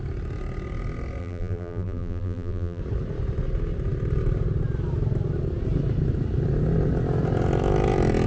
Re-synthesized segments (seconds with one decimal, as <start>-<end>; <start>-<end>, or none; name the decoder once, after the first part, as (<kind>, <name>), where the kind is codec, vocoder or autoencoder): 1.2-2.8 (vocoder, BigVGAN v2)